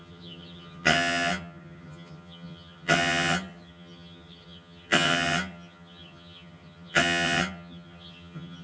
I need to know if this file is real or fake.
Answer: fake